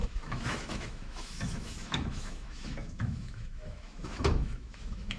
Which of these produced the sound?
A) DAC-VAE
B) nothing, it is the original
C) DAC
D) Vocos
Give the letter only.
A